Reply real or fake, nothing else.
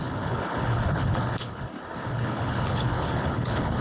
fake